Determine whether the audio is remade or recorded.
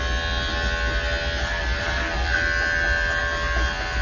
recorded